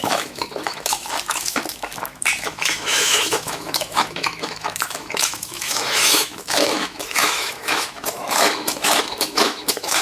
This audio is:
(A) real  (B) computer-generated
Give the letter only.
B